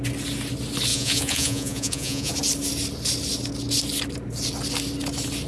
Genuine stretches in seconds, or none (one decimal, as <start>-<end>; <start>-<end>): 0.0-0.9; 2.3-5.5